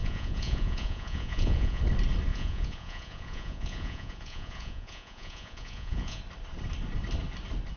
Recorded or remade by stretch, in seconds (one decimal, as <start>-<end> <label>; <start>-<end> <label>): 0.0-1.8 remade; 1.8-2.3 recorded; 2.3-6.2 remade; 6.2-7.8 recorded